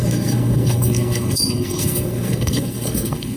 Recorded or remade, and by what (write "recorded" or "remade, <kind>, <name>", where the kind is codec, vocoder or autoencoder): remade, codec, SNAC